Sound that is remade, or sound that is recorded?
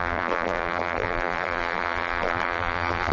remade